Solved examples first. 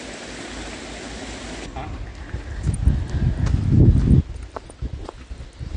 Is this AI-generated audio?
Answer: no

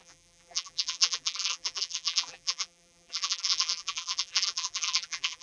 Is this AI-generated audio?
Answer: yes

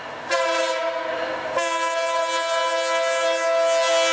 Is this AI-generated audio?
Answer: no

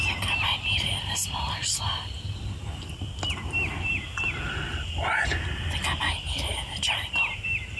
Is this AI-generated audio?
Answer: no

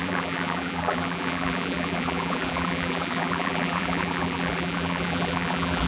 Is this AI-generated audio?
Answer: yes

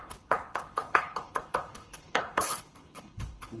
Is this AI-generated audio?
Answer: yes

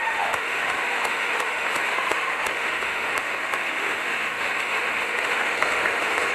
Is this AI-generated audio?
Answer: yes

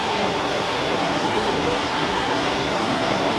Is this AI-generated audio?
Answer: yes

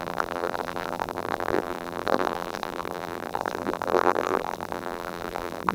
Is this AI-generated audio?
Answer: yes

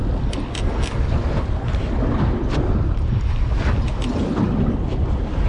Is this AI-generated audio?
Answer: no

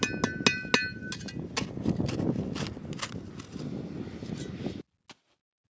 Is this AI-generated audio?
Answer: no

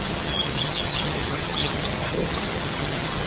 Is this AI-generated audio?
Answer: yes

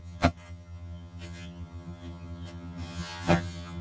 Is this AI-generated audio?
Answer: yes